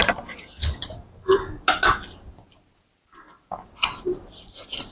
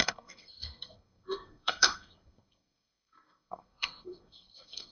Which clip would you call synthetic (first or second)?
second